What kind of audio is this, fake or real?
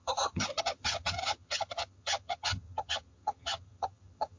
fake